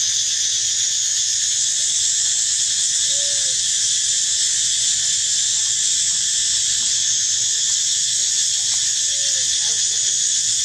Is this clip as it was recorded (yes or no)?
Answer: yes